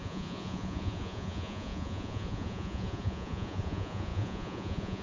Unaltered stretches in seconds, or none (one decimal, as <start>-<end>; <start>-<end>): none

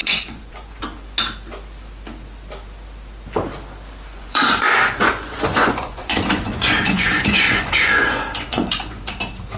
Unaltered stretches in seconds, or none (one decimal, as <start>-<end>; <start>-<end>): 0.8-4.1; 9.2-9.6

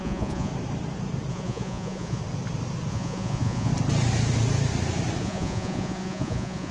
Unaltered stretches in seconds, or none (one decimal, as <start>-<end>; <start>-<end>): 0.5-1.3; 2.2-2.9; 3.7-5.2

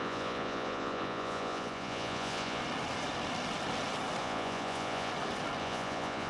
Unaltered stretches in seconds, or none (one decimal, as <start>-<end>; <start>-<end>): 2.6-4.2; 5.1-5.6

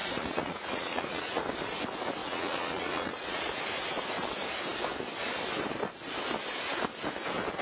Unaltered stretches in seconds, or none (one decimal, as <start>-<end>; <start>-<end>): 1.4-2.2; 3.4-7.6

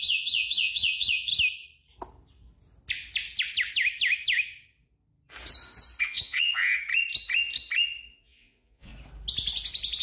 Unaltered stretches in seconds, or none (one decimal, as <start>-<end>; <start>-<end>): 1.3-6.0; 6.6-8.1; 8.9-10.0

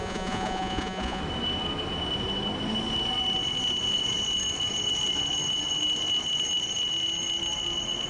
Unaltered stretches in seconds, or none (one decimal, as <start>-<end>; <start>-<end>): 1.2-8.1